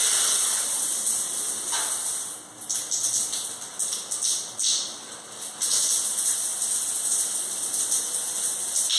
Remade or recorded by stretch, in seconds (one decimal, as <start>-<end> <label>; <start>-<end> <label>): 0.0-9.0 recorded